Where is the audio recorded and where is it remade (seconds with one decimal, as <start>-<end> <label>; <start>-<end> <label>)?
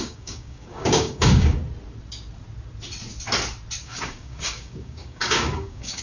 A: 0.0-1.6 remade; 1.6-3.8 recorded; 3.8-6.0 remade